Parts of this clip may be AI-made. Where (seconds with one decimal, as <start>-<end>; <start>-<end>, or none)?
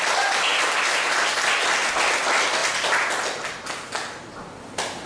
none